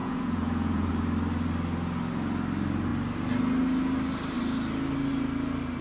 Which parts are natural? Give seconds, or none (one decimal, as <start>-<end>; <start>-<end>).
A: 0.9-5.8